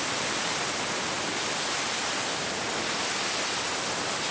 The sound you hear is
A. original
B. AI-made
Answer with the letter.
A